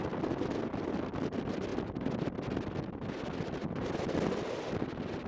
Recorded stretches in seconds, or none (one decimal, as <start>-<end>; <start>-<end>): 0.0-5.3